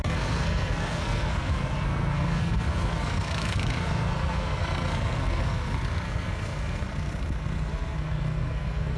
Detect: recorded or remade remade